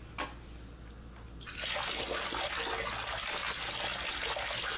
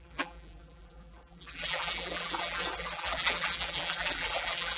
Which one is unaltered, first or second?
first